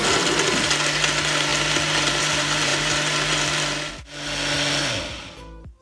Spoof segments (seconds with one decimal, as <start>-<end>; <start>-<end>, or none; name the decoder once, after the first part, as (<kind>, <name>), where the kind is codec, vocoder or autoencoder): none